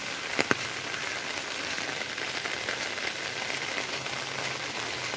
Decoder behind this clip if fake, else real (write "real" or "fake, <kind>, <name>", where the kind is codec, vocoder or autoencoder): real